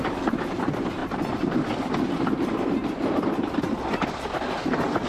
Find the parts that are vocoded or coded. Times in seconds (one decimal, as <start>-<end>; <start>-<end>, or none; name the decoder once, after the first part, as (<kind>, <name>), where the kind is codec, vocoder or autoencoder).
none